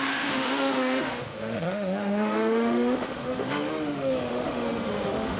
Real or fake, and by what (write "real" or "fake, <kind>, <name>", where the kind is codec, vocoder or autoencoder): fake, autoencoder, DAC-VAE